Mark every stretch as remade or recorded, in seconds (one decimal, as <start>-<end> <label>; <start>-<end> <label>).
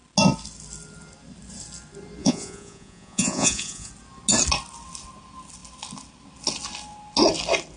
0.0-2.2 recorded; 2.2-3.9 remade; 3.9-7.8 recorded